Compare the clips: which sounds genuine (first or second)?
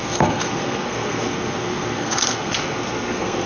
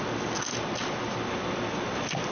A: second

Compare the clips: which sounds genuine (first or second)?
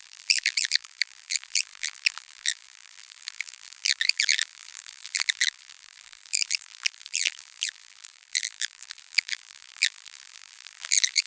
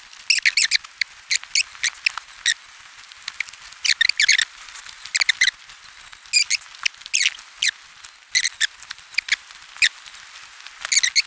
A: second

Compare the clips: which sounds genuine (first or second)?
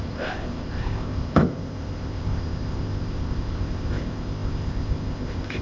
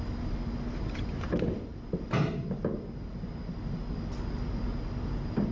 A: second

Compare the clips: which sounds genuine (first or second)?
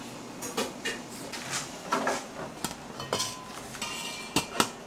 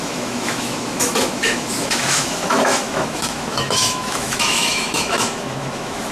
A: first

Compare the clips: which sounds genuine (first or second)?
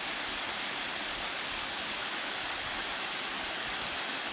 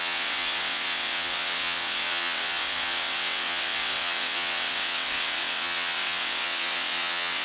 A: first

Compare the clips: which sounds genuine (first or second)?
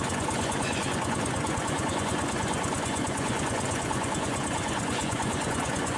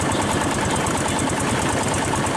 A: second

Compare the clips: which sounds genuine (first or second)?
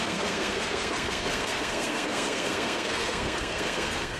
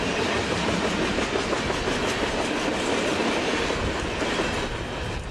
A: second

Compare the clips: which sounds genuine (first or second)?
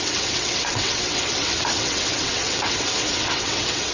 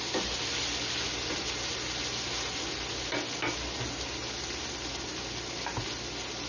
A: second